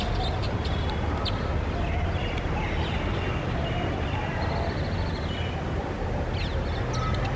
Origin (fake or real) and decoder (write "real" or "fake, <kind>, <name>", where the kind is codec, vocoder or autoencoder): real